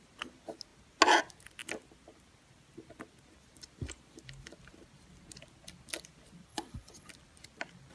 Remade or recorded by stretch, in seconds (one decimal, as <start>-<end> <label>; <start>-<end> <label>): 0.0-6.5 recorded; 6.5-7.1 remade; 7.1-7.9 recorded